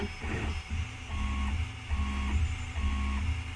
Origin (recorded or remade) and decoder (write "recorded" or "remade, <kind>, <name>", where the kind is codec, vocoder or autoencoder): recorded